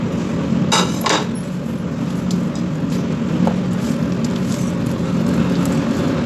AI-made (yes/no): no